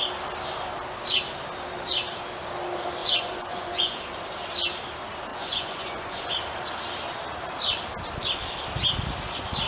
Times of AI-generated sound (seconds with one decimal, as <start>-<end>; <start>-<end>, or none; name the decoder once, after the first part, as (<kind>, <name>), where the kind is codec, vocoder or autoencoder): 3.0-4.0 (vocoder, Vocos); 5.3-6.3